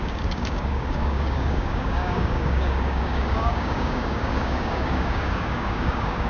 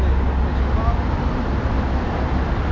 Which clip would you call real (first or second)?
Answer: second